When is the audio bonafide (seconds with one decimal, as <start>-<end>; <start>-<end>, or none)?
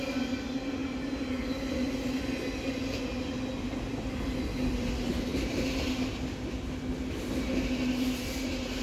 0.0-8.8